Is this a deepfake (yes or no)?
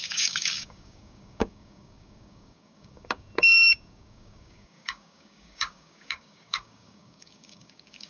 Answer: yes